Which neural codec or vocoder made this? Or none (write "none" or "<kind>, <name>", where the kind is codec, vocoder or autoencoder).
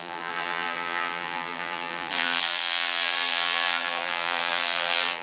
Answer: vocoder, BigVGAN v2